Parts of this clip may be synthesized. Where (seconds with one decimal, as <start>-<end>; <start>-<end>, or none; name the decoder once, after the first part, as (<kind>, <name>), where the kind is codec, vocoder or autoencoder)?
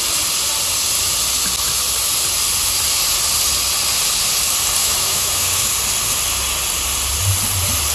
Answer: 4.8-5.7 (autoencoder, DAC-VAE)